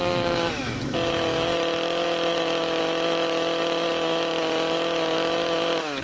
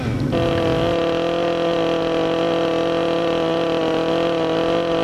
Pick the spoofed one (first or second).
first